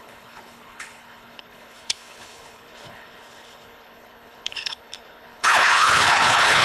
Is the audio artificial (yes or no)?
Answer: yes